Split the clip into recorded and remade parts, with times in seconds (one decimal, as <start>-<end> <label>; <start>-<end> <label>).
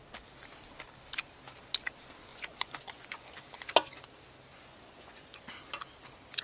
0.0-2.3 recorded; 2.3-3.3 remade; 3.3-4.5 recorded; 4.5-5.4 remade; 5.4-6.4 recorded